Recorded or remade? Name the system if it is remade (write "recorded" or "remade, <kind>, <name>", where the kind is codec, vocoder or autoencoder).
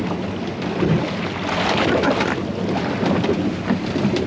recorded